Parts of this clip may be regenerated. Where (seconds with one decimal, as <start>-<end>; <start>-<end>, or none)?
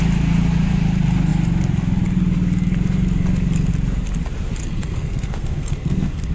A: 4.6-6.3